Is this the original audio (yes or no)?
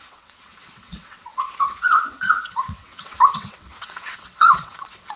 no